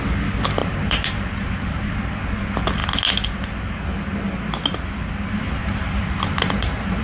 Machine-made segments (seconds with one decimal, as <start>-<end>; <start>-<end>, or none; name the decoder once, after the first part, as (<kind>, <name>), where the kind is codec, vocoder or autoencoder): 0.6-1.9 (vocoder, BigVGAN v2); 5.6-6.2